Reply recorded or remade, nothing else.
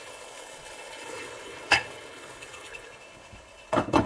remade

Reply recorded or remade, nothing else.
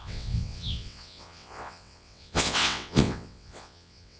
remade